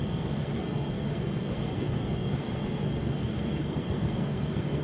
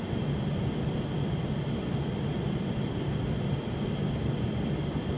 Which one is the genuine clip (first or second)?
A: second